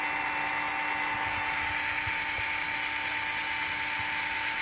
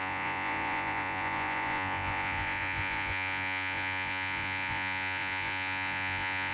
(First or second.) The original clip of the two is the first